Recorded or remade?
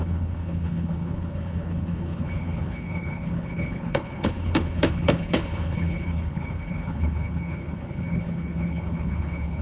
remade